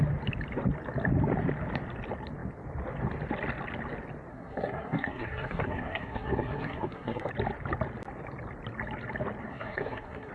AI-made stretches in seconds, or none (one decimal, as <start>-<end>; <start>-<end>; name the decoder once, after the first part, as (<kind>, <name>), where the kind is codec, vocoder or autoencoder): 4.3-7.3 (codec, SNAC); 9.5-10.3